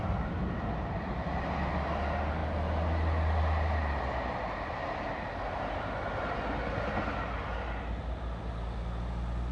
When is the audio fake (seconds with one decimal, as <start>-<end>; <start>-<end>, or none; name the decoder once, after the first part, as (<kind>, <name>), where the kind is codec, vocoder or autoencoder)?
none